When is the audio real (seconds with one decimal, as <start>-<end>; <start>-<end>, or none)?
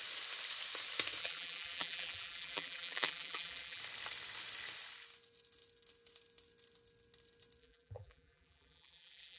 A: 0.0-1.2; 3.8-7.6